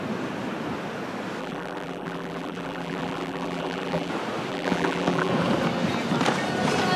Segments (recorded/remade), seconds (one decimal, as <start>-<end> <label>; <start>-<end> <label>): 0.0-1.4 recorded; 1.4-4.1 remade; 4.1-4.5 recorded; 4.5-5.3 remade; 5.3-7.0 recorded